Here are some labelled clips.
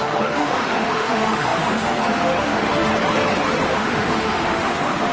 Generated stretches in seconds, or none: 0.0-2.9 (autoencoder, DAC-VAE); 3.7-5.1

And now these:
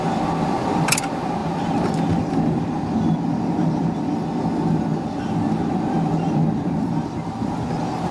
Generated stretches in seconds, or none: none

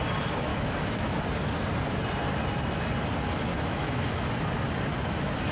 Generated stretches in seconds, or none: 0.5-1.2 (autoencoder, DAC-VAE); 3.5-4.3